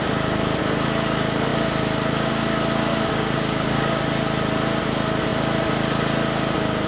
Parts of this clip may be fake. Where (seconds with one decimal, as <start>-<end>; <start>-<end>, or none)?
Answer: 2.9-4.0